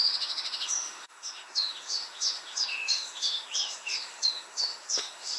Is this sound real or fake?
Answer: fake